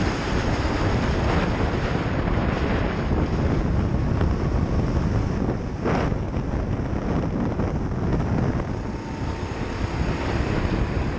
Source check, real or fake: real